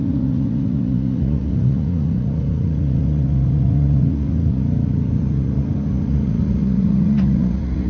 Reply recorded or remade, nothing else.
remade